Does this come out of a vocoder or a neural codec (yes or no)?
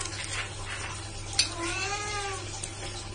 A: no